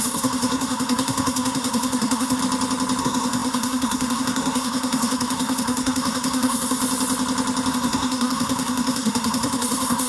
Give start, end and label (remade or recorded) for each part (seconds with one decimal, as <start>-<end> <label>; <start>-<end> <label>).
0.0-2.4 remade; 2.4-3.0 recorded; 3.0-6.8 remade; 6.8-7.7 recorded; 7.7-10.1 remade